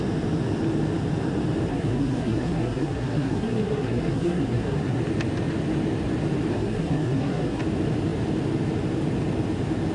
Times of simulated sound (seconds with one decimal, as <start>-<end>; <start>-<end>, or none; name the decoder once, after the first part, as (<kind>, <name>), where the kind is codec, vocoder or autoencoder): 1.7-5.0 (codec, SNAC); 6.5-7.6

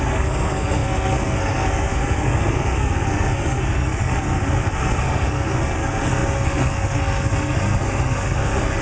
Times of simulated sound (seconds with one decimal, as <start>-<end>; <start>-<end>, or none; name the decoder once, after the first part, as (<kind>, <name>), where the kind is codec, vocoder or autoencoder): 0.0-8.8 (codec, SNAC)

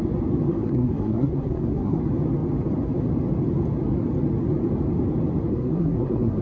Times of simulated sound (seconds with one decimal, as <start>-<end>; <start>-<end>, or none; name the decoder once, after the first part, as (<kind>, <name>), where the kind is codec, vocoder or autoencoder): 0.5-2.0 (codec, SNAC); 5.5-6.4

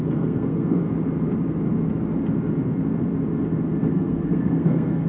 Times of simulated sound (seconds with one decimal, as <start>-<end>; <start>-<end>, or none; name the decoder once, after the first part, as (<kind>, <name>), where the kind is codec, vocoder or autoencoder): 0.0-0.8 (codec, SNAC); 3.9-5.1

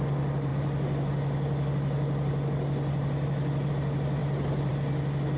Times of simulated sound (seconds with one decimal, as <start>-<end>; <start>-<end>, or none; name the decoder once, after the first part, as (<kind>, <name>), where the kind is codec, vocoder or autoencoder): none

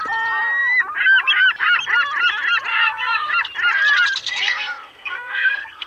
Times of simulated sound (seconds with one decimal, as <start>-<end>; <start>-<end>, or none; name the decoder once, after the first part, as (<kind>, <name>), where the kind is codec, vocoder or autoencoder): 2.7-3.3 (codec, SNAC); 4.2-5.9

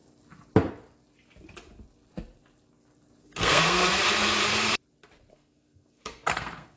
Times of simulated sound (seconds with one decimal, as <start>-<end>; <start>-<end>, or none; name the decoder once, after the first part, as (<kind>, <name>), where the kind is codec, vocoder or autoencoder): 3.2-3.8 (codec, SNAC); 5.3-6.8